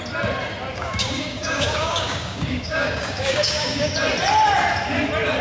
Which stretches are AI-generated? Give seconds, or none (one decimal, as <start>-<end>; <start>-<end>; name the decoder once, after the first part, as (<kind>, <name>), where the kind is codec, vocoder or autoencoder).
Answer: 0.7-3.9 (codec, DAC)